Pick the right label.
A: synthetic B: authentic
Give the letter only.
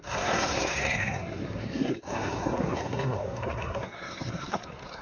A